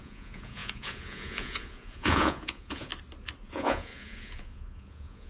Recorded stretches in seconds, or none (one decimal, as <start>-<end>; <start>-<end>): 2.9-3.4